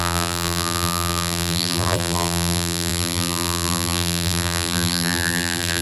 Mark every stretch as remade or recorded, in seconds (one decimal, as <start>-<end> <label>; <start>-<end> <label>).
0.0-5.8 remade